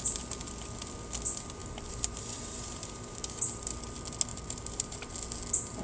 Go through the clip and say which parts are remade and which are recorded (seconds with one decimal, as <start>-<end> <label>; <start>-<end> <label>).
0.0-1.6 recorded; 1.6-3.7 remade; 3.7-4.3 recorded; 4.3-5.0 remade; 5.0-5.8 recorded